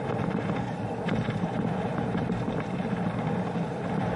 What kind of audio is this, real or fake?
fake